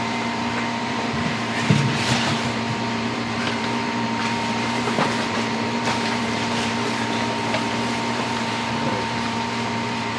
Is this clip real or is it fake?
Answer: fake